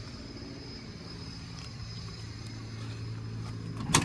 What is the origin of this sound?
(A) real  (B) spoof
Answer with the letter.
A